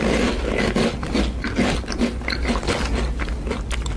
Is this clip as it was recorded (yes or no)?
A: yes